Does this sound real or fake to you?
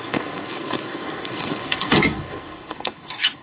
fake